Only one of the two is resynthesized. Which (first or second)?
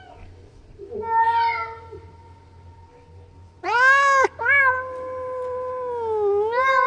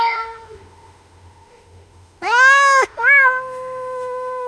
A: second